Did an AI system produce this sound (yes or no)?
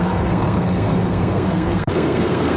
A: yes